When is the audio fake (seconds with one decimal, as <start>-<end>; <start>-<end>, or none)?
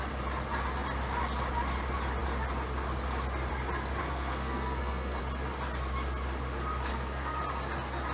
4.0-5.2; 6.9-7.4